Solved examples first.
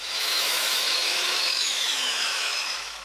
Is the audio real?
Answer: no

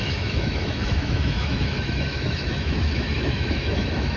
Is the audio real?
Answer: no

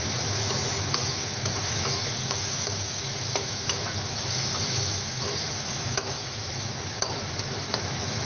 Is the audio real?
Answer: no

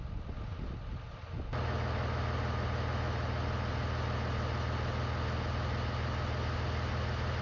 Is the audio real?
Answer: yes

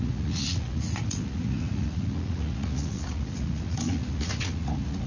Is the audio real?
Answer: no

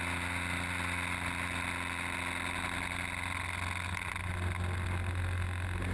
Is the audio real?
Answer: yes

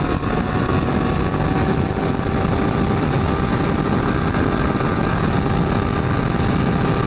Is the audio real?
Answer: yes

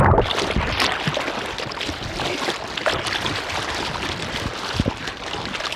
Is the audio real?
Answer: yes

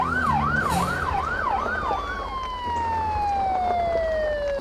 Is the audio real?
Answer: yes